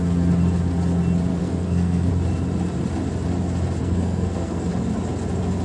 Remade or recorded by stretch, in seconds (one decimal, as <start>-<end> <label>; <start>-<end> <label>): 0.0-1.3 recorded; 1.3-2.1 remade; 2.1-3.8 recorded; 3.8-4.7 remade; 4.7-5.6 recorded